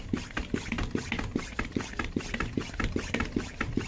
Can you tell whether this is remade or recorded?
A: recorded